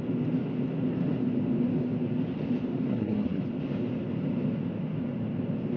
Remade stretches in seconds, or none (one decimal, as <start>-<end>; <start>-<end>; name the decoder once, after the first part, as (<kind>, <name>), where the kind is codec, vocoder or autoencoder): 2.9-3.4 (codec, SNAC)